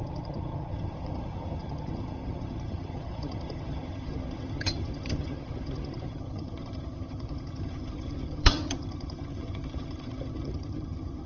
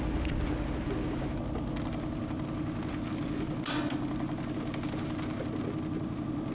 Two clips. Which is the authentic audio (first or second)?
second